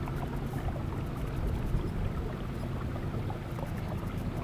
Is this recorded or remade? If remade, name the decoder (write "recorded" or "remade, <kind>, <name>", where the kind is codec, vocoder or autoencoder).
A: recorded